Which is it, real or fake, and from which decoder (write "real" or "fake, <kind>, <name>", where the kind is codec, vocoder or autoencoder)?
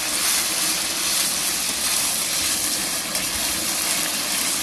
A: real